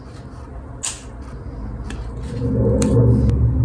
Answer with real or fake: real